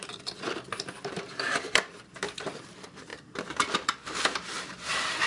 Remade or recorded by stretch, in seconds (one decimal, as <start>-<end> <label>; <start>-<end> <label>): 0.0-5.3 remade